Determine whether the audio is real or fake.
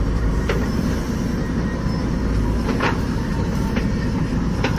fake